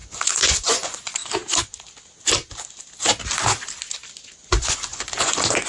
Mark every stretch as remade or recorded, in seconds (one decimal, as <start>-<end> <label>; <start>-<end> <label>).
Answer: 0.0-1.2 remade; 1.2-4.6 recorded; 4.6-5.7 remade

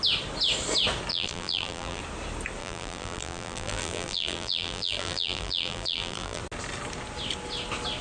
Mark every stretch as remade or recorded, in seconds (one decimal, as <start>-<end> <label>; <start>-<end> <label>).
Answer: 0.0-1.1 recorded; 1.1-2.0 remade; 2.0-2.6 recorded; 2.6-6.4 remade; 6.4-8.0 recorded

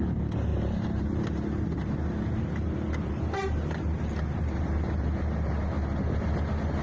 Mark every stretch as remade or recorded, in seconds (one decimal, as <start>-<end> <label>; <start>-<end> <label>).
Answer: 0.0-0.5 recorded; 0.5-1.0 remade; 1.0-6.8 recorded

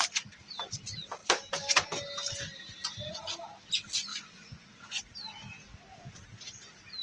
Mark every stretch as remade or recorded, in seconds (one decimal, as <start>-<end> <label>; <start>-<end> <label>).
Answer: 0.0-4.1 recorded; 4.1-5.0 remade; 5.0-7.0 recorded

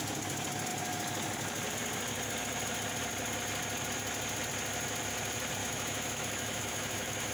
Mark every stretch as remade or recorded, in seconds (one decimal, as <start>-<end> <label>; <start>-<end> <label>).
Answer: 0.0-5.6 recorded; 5.6-7.3 remade